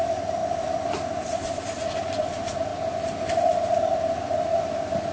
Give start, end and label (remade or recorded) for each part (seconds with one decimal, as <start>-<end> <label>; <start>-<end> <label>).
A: 0.0-0.4 recorded; 0.4-2.1 remade; 2.1-2.7 recorded; 2.7-5.1 remade